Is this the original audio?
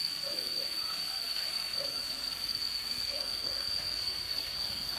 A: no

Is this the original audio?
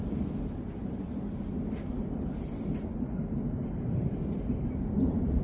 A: yes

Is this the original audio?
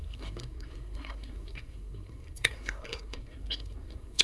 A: no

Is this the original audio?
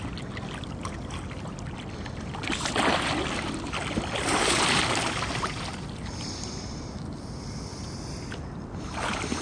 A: yes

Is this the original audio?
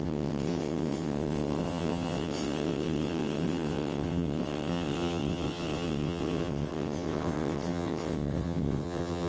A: no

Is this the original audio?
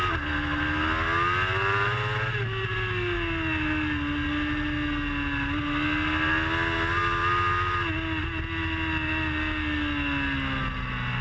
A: yes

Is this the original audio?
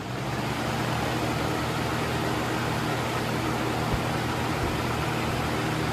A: yes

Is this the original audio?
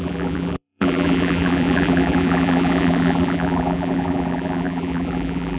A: no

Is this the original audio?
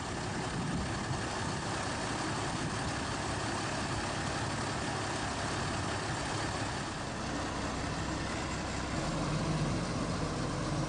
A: yes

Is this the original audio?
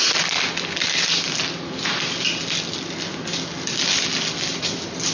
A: yes